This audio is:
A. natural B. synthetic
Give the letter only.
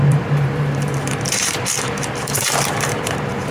B